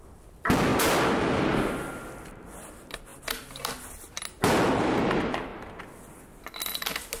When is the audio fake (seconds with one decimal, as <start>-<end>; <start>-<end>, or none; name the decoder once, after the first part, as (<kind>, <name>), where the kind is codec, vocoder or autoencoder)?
none